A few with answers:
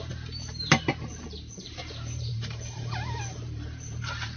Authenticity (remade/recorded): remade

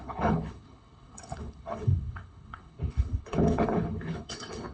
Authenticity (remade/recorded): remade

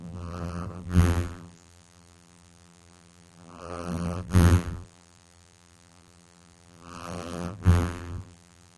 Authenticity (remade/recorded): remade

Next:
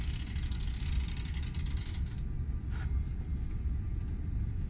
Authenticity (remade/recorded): recorded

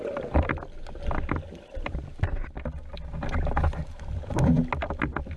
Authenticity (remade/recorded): recorded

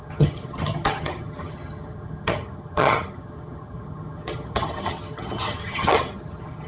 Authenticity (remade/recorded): remade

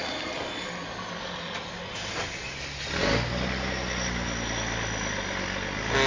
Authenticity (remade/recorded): recorded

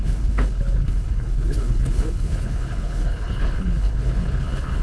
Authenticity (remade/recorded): remade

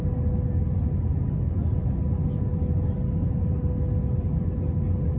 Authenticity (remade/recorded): recorded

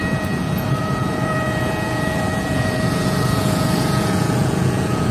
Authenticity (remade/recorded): remade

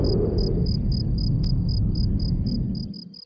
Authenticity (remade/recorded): recorded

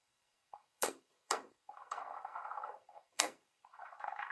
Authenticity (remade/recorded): remade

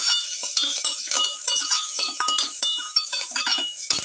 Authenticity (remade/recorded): remade